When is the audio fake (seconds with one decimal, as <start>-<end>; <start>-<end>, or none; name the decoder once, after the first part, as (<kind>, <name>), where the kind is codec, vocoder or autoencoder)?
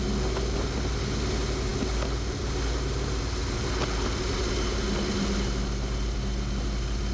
none